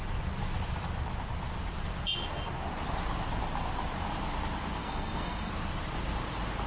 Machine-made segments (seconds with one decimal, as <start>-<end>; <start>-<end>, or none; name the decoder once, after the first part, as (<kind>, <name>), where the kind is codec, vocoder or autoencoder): 4.8-5.5 (codec, SNAC)